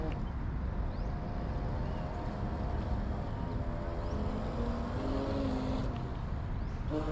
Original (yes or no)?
yes